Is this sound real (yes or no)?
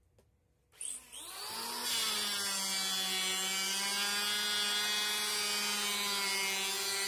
yes